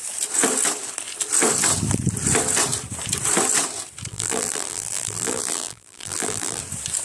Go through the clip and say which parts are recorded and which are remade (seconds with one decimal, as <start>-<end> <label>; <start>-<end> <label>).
0.0-4.1 recorded; 4.1-6.6 remade; 6.6-7.0 recorded